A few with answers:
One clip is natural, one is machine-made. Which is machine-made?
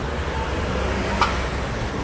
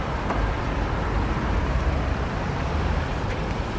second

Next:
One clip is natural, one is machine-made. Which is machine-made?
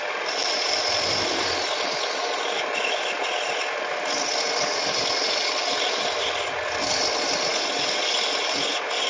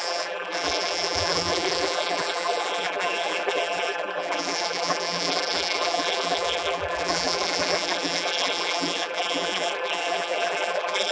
second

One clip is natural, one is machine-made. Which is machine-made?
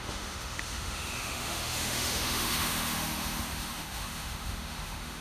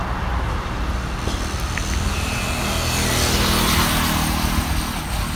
first